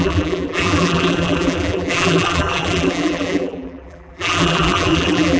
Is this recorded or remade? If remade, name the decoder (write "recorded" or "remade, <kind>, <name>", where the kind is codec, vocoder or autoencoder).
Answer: remade, vocoder, BigVGAN v2